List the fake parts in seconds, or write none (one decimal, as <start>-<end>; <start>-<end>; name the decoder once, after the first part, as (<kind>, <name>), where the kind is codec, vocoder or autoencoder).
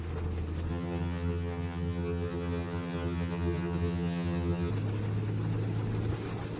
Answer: 0.7-4.7 (vocoder, HiFi-GAN)